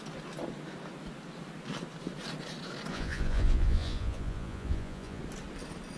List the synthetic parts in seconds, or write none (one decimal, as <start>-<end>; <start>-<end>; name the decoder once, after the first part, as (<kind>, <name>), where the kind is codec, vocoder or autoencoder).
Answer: 2.9-5.2 (vocoder, Vocos)